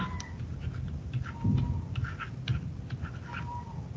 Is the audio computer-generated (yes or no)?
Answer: no